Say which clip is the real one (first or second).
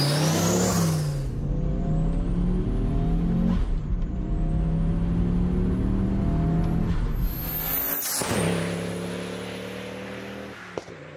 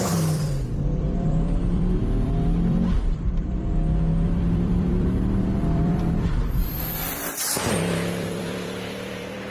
first